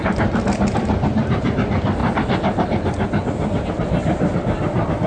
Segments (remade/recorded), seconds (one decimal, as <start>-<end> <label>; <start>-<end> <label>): 0.0-5.1 recorded